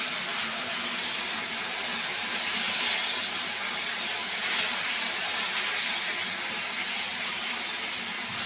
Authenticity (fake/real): real